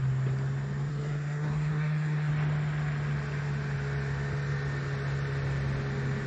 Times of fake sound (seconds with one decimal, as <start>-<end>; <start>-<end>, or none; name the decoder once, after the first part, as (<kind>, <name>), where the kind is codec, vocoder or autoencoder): 0.9-2.3 (codec, SNAC)